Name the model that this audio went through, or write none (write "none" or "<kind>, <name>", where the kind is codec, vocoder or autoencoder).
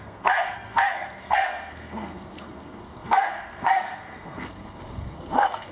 codec, SNAC